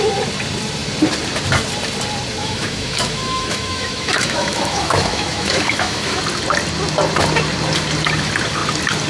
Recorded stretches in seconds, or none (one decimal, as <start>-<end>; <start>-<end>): 0.0-2.4; 6.2-9.1